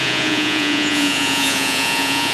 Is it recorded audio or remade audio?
remade